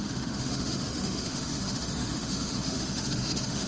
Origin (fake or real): fake